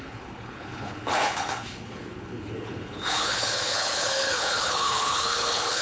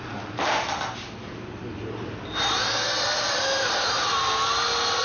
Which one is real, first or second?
second